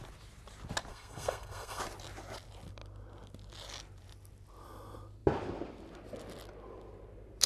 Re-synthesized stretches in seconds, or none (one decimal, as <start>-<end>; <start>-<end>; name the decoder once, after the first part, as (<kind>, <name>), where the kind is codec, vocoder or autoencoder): 0.9-1.8 (codec, SNAC)